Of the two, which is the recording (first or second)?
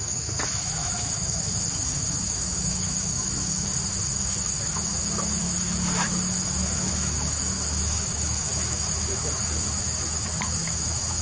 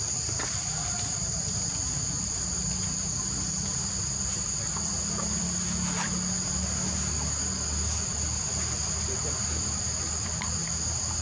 second